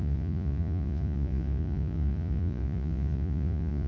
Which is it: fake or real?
fake